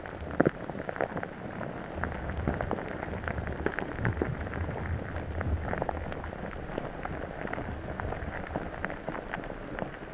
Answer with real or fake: real